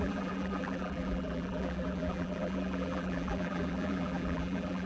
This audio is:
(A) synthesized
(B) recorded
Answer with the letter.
A